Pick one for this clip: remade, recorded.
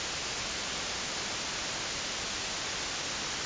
recorded